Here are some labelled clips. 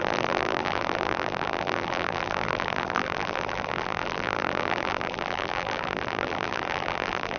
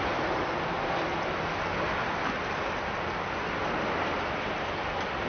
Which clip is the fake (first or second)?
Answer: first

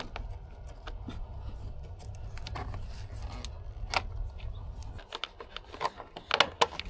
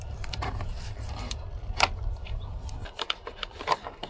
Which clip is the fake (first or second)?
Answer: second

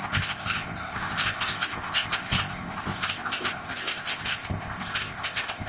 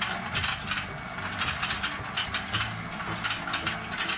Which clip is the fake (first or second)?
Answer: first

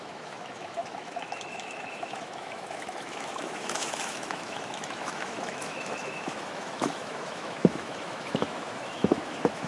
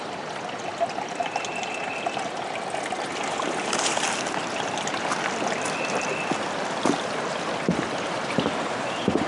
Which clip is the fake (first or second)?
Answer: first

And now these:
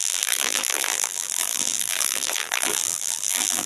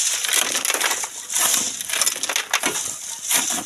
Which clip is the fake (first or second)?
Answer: first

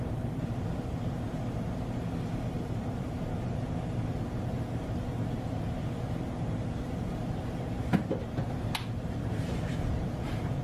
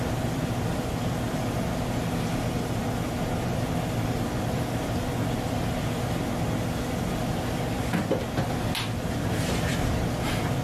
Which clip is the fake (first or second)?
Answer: first